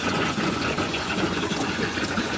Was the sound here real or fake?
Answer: fake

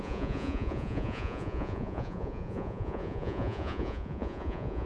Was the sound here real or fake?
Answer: fake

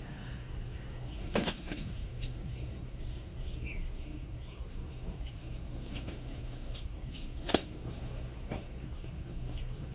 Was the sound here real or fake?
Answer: fake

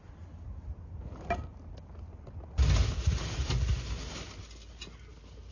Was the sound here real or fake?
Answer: real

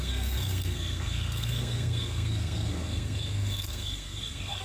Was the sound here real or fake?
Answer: fake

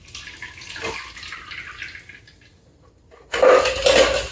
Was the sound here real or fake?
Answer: real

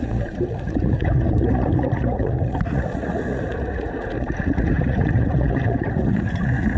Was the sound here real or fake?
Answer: fake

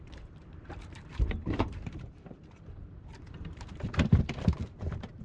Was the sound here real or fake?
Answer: fake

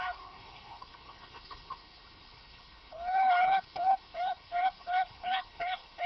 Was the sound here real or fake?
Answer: fake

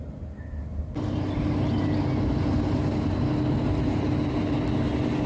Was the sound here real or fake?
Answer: real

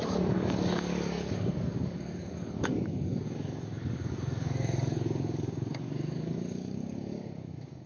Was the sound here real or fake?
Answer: fake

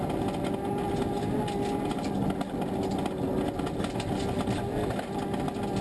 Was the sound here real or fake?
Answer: real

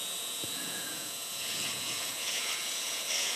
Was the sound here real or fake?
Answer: fake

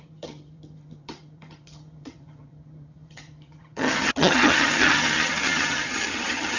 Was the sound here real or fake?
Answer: fake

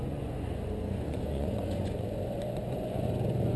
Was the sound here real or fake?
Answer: fake